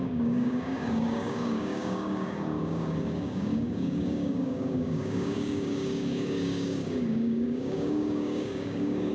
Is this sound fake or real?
fake